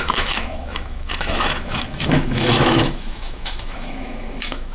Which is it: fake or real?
fake